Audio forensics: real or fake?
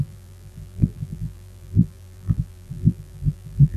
fake